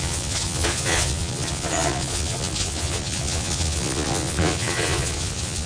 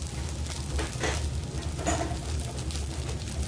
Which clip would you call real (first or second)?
second